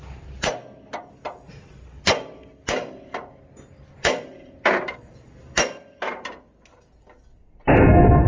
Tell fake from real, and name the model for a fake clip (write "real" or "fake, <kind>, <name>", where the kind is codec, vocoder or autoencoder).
real